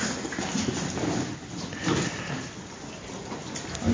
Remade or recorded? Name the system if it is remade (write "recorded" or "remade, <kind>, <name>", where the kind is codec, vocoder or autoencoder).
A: recorded